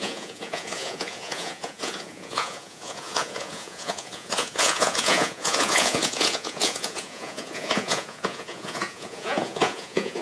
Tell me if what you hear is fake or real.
fake